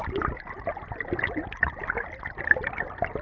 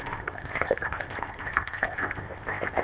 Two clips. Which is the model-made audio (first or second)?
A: second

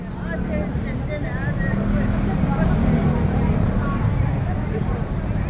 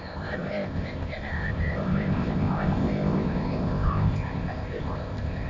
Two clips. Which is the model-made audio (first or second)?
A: second